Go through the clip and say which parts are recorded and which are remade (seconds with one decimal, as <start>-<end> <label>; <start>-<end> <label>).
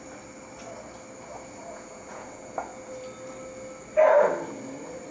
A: 0.0-1.6 recorded; 1.6-2.9 remade; 2.9-5.1 recorded